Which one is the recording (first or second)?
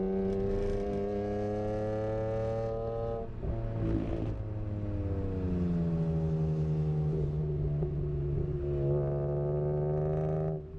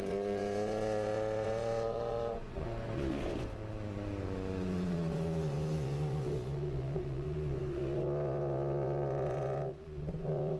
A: first